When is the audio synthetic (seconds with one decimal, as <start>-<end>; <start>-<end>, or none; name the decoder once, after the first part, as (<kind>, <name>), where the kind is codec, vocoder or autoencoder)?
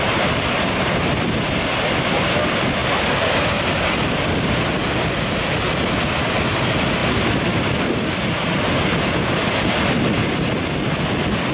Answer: none